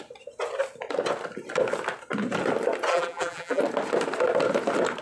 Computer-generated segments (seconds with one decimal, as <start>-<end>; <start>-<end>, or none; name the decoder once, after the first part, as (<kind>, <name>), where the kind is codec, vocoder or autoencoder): 2.9-3.6 (vocoder, BigVGAN v2)